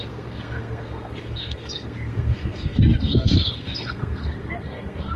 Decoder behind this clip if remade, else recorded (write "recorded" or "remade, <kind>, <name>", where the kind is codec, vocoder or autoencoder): remade, codec, SNAC